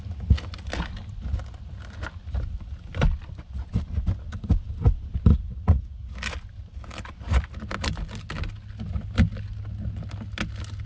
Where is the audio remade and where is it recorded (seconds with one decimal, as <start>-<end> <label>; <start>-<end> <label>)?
0.0-5.3 recorded; 5.3-6.1 remade; 6.1-10.9 recorded